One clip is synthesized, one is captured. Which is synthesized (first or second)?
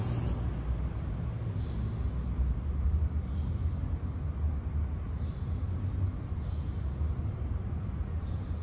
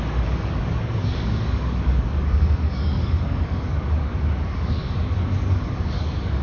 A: second